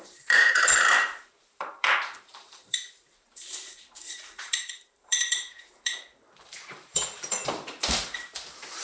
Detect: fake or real fake